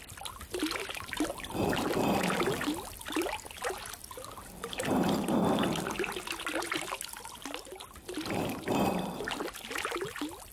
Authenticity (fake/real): real